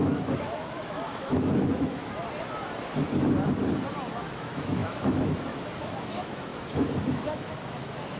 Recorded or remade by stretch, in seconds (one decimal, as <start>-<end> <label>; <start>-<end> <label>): 0.0-2.2 remade; 2.2-4.2 recorded; 4.2-8.2 remade